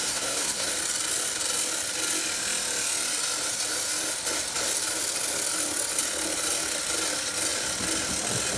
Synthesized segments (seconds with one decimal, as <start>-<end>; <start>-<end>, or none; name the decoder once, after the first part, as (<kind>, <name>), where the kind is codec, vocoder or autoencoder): 0.0-0.7 (codec, SNAC)